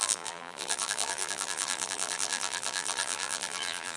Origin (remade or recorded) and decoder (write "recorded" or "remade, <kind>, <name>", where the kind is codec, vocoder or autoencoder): remade, vocoder, BigVGAN v2